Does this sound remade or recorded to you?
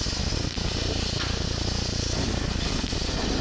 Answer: recorded